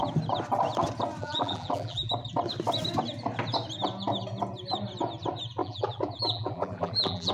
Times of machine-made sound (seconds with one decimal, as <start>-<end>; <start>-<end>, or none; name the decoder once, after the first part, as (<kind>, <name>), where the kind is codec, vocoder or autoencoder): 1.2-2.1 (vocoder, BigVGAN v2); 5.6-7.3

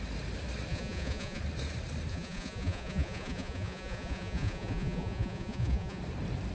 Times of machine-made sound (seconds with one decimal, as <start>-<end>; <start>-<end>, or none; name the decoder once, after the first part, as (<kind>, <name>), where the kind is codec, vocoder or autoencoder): 0.7-1.4 (vocoder, Vocos); 2.1-6.0

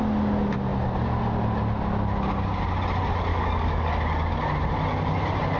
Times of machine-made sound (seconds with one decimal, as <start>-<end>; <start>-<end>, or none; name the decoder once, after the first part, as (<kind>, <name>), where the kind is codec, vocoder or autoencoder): 3.3-3.9 (codec, DAC)

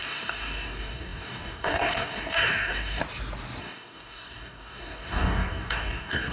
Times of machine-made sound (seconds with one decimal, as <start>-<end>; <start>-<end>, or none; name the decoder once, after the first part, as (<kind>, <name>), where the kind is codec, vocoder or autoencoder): 0.0-3.0 (codec, DAC); 3.6-6.3